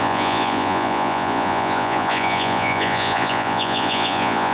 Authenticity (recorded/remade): remade